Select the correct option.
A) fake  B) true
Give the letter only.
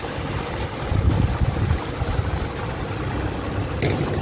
B